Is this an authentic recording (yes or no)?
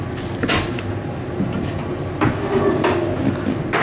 yes